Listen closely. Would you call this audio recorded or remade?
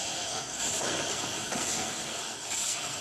remade